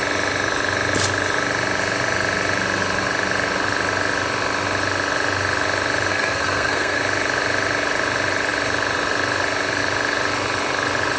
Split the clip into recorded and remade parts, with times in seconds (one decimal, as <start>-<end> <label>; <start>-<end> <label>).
0.0-6.1 recorded; 6.1-7.0 remade; 7.0-11.2 recorded